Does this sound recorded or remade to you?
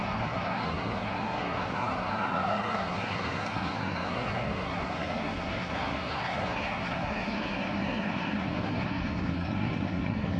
remade